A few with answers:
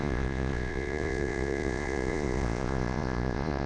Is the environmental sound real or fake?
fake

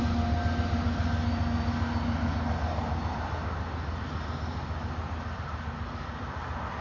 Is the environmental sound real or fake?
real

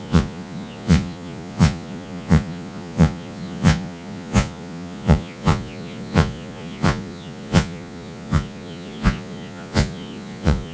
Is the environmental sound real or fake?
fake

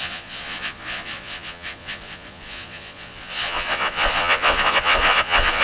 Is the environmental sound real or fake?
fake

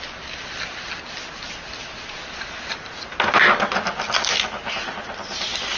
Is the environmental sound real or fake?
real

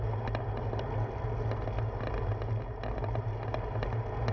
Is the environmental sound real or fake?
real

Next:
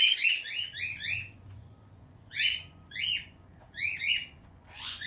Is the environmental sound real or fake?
fake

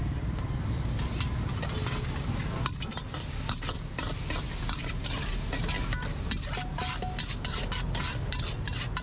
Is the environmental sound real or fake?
real